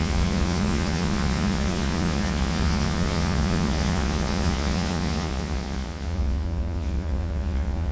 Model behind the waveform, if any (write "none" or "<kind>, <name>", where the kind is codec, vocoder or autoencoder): vocoder, Vocos